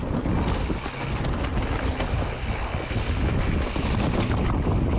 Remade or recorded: recorded